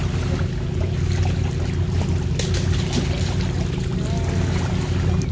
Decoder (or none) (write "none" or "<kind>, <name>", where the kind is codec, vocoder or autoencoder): none